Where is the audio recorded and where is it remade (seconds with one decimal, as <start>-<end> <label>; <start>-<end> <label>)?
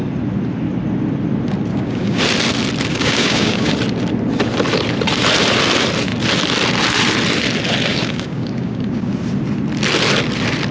0.0-1.7 recorded; 1.7-2.2 remade; 2.2-2.9 recorded; 2.9-3.7 remade; 3.7-7.9 recorded; 7.9-9.1 remade; 9.1-10.7 recorded